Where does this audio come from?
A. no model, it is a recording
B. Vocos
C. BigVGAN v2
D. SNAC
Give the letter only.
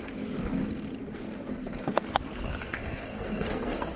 D